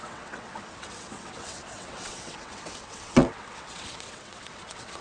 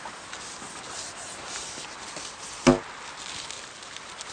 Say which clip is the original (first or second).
second